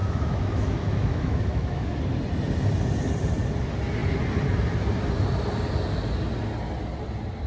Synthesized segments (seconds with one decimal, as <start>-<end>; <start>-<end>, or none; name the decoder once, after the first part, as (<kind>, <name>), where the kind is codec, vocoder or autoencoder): 0.0-2.0 (autoencoder, DAC-VAE)